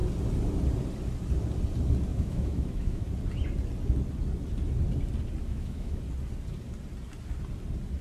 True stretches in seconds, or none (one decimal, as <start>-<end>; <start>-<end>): 0.0-2.1; 3.0-5.4; 6.0-8.0